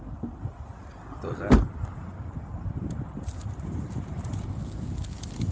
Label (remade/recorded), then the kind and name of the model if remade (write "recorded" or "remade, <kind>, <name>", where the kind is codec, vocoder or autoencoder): recorded